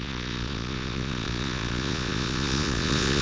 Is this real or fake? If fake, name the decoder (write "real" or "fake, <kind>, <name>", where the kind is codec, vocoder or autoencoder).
fake, vocoder, Vocos